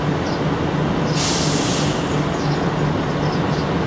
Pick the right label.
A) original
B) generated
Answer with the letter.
A